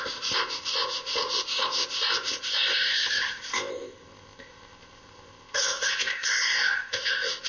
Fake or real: fake